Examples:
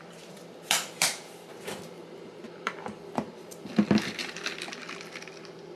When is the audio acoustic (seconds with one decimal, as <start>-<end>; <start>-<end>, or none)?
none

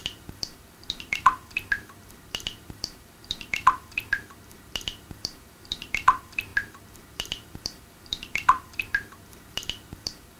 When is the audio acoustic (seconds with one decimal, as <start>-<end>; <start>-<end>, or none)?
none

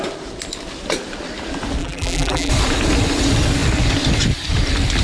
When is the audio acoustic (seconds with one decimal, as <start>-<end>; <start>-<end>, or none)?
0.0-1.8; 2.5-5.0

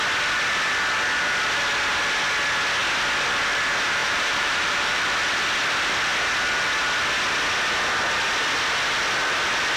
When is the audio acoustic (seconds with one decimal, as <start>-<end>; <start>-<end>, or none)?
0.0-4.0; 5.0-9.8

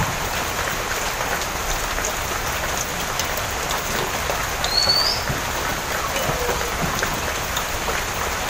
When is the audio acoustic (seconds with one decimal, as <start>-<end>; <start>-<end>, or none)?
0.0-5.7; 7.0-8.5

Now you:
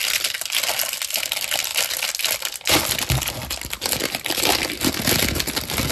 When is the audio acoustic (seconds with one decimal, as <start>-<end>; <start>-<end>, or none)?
0.0-5.9